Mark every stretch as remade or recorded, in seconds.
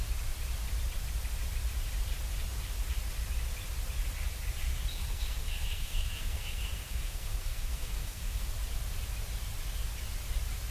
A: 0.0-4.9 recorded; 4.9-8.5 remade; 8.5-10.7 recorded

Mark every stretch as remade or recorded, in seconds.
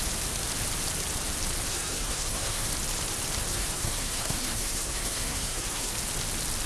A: 0.0-1.7 recorded; 1.7-2.7 remade; 2.7-3.5 recorded; 3.5-5.9 remade; 5.9-6.7 recorded